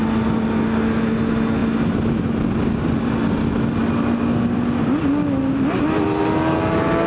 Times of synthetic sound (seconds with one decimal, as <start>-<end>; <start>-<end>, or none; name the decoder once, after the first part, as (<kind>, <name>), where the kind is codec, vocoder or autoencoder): none